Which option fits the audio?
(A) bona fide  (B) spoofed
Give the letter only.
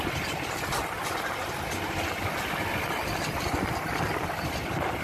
A